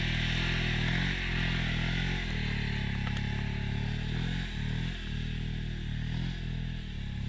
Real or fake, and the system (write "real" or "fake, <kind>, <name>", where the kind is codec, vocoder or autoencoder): real